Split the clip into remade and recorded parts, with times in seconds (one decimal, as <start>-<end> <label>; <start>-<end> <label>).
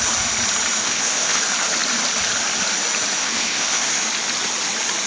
0.0-0.8 recorded; 0.8-1.4 remade; 1.4-3.2 recorded; 3.2-3.9 remade; 3.9-5.1 recorded